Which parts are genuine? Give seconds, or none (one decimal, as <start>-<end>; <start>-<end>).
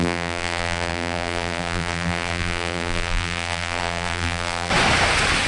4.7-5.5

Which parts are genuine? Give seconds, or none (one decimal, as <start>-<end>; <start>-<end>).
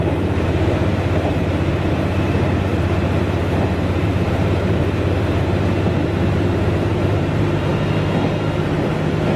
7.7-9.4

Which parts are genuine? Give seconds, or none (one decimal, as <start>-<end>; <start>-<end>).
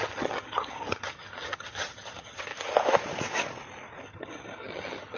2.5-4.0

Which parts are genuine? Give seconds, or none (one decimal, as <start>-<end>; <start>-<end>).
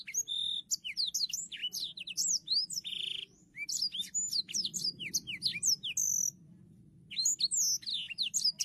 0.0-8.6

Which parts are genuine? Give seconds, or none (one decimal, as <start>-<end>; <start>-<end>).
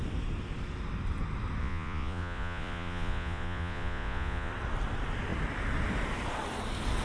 0.0-1.6; 4.5-7.0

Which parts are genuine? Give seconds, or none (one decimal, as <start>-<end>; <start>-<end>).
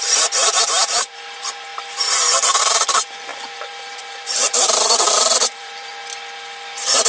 6.0-7.1